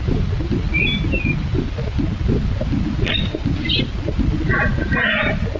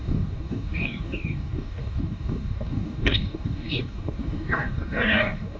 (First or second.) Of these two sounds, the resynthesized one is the second